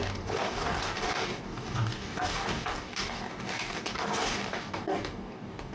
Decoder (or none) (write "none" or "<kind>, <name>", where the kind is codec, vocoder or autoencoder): codec, DAC